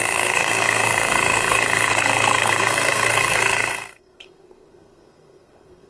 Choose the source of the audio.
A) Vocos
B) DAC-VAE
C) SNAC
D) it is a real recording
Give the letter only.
C